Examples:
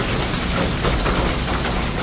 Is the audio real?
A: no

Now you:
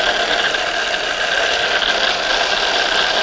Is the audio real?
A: yes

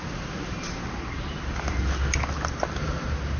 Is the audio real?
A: yes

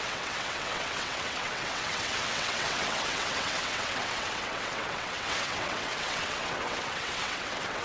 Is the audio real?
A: no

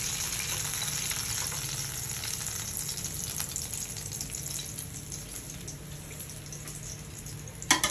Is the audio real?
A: yes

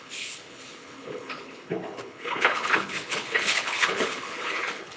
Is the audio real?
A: no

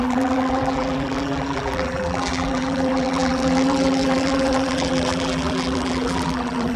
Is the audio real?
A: no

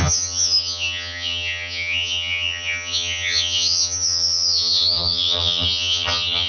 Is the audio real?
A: no